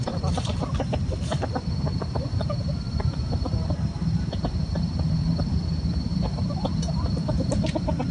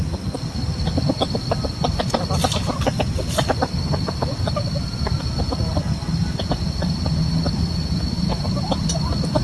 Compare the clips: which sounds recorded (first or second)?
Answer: second